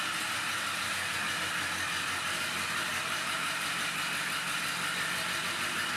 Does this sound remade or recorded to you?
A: recorded